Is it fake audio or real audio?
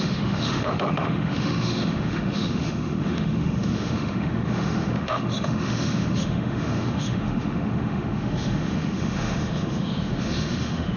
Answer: fake